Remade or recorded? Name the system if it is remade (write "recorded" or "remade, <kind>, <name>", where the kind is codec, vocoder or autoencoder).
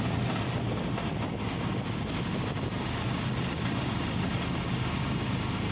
recorded